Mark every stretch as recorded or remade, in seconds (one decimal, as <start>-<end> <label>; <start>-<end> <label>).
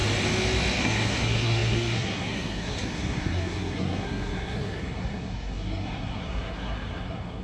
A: 0.0-0.8 recorded; 0.8-7.4 remade